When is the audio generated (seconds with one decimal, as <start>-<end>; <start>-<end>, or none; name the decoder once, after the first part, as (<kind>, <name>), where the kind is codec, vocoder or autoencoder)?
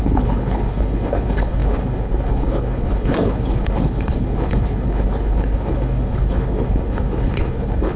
0.0-8.0 (codec, HILCodec)